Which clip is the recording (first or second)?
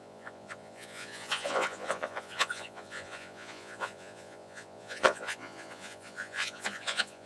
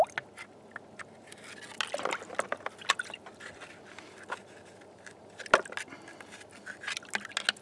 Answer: second